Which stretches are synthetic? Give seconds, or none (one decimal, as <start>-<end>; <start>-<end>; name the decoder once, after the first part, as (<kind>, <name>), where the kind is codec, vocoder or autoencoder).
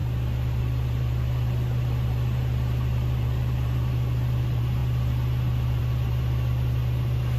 0.6-7.4 (vocoder, BigVGAN v2)